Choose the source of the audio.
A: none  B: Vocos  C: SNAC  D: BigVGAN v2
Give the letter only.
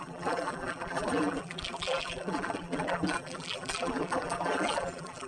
D